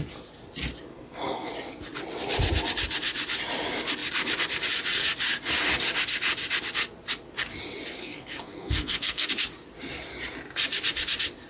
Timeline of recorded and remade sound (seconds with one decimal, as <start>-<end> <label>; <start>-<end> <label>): 0.0-0.9 recorded; 0.9-1.5 remade; 1.5-8.0 recorded; 8.0-9.3 remade; 9.3-11.5 recorded